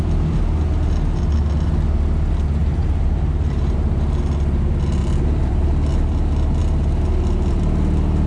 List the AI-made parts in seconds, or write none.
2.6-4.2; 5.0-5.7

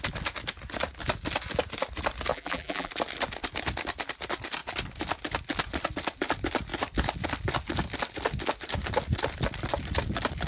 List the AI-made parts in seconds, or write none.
2.3-2.9